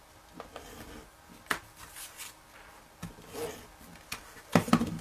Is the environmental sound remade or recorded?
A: recorded